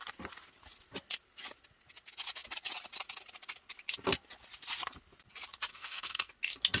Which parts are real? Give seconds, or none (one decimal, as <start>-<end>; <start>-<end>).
0.0-5.7; 6.3-6.8